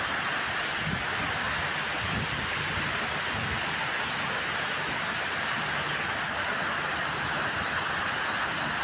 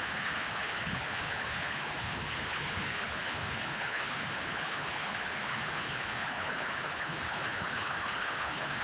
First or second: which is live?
first